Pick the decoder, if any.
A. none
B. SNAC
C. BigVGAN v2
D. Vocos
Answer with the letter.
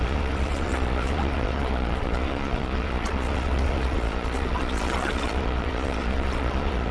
D